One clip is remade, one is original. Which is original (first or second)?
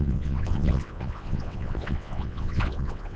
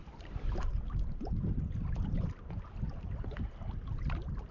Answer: second